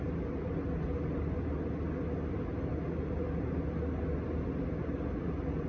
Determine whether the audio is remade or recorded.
recorded